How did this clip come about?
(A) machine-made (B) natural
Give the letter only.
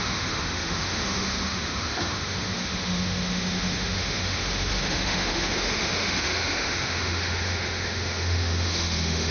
A